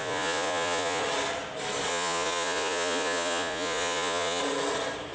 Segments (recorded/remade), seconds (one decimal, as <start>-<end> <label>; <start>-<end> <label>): 0.0-1.0 remade; 1.0-1.9 recorded; 1.9-4.4 remade; 4.4-5.1 recorded